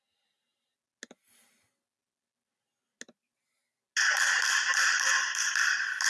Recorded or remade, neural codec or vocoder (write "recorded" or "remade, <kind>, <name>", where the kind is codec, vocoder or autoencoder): recorded